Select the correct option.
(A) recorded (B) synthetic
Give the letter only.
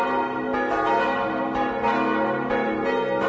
A